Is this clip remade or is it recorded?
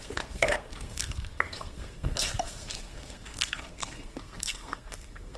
remade